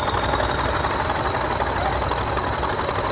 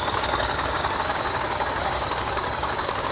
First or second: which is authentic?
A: first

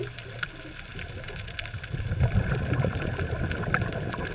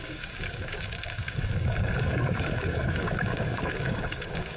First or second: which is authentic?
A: first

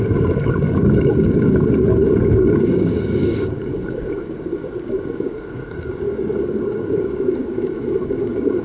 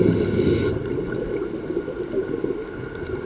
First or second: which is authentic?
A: second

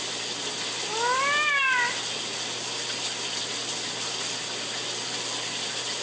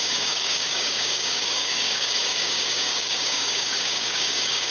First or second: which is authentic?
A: first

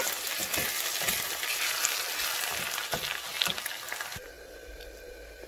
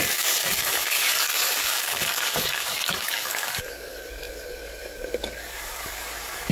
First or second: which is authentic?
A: first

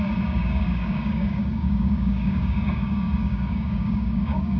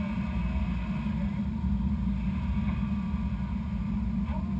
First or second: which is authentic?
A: second